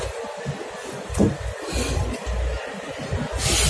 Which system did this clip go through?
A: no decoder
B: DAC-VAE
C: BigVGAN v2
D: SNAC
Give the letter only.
C